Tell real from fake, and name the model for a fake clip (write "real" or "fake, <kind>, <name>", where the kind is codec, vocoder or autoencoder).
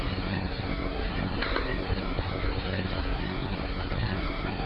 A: fake, codec, SNAC